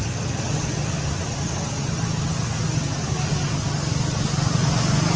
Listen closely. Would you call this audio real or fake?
real